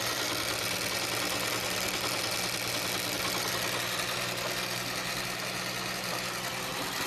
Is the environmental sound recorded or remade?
recorded